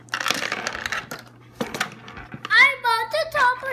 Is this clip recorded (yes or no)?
yes